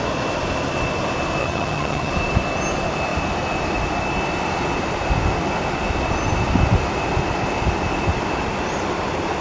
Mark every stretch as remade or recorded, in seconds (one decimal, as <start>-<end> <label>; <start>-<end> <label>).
0.0-1.4 recorded; 1.4-2.1 remade; 2.1-9.4 recorded